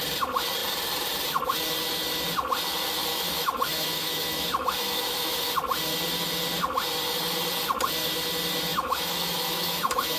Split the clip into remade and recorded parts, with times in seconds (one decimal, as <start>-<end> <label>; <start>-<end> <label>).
0.0-3.1 recorded; 3.1-5.5 remade; 5.5-8.7 recorded; 8.7-10.2 remade